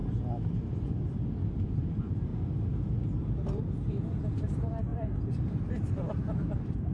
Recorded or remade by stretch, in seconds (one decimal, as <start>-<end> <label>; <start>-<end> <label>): 0.0-1.5 recorded; 1.5-2.3 remade; 2.3-3.2 recorded; 3.2-6.9 remade

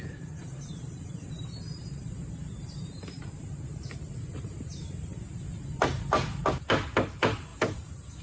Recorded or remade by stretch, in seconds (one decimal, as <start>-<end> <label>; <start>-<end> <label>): 0.0-8.2 remade

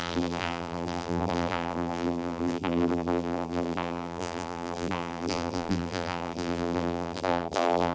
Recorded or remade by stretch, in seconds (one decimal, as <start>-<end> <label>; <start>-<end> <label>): 0.0-7.9 remade

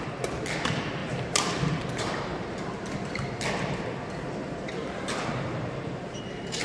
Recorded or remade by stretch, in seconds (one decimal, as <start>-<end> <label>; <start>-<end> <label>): 0.0-1.0 recorded; 1.0-3.3 remade; 3.3-4.4 recorded; 4.4-6.6 remade